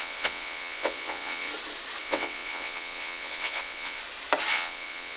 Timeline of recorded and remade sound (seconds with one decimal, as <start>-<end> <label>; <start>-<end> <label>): 0.0-1.5 remade; 1.5-2.0 recorded; 2.0-4.0 remade; 4.0-4.5 recorded; 4.5-5.2 remade